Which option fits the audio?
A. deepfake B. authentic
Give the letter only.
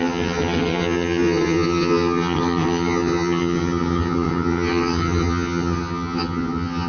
A